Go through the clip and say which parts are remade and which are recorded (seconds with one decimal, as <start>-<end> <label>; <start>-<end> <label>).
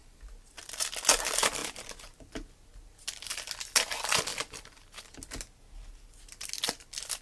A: 0.0-7.2 recorded